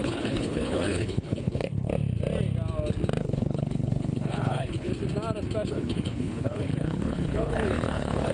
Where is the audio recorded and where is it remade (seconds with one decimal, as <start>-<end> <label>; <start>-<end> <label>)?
0.0-1.9 remade; 1.9-3.2 recorded; 3.2-4.9 remade; 4.9-5.7 recorded; 5.7-8.3 remade